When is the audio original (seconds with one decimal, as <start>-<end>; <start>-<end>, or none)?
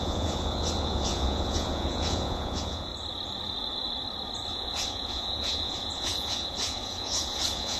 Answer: 2.9-4.5